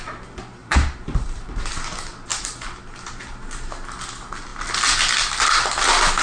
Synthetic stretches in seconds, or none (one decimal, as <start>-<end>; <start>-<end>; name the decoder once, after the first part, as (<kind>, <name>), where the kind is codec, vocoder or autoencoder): 0.6-1.6 (vocoder, BigVGAN v2); 2.3-3.3